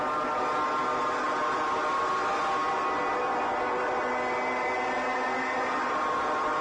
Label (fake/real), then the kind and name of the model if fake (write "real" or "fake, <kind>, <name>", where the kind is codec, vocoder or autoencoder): real